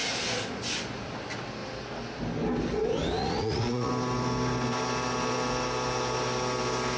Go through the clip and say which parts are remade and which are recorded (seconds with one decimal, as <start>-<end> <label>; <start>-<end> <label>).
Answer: 0.0-3.2 recorded; 3.2-3.9 remade; 3.9-7.0 recorded